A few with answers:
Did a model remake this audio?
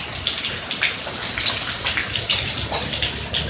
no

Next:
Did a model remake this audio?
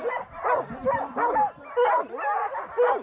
no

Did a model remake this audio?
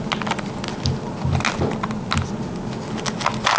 no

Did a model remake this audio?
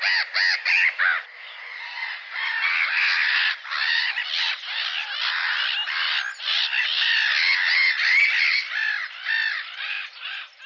no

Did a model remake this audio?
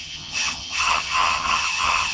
yes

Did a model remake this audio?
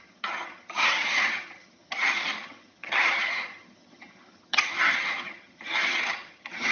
yes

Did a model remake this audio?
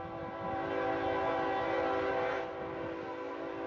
no